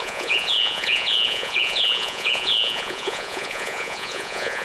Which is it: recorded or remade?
remade